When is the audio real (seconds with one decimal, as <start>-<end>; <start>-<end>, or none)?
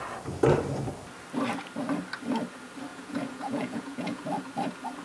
0.0-2.9; 4.2-5.0